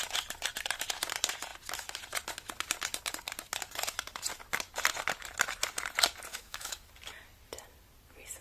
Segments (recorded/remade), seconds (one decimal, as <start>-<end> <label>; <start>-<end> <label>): 0.0-6.3 recorded; 6.3-6.9 remade; 6.9-8.4 recorded